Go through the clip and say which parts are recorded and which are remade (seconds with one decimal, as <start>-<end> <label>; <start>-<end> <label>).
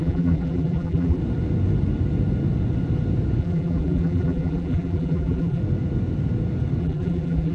0.0-1.2 remade; 1.2-3.4 recorded; 3.4-5.6 remade; 5.6-6.8 recorded; 6.8-7.5 remade